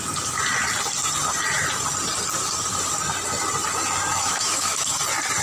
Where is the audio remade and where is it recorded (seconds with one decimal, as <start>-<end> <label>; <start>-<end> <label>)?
0.0-4.1 recorded; 4.1-5.0 remade; 5.0-5.4 recorded